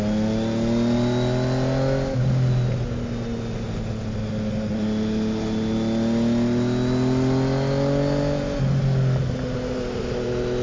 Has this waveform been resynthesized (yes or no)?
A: no